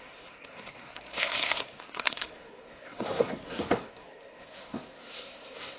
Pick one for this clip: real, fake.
fake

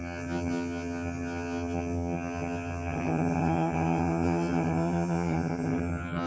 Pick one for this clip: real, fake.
fake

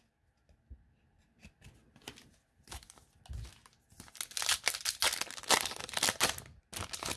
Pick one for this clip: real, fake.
real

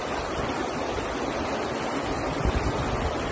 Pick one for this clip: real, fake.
real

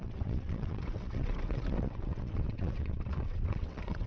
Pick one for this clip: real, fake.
fake